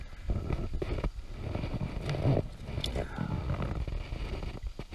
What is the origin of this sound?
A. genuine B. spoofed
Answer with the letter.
A